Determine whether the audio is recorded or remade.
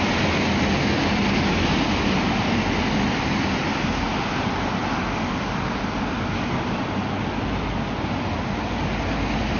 recorded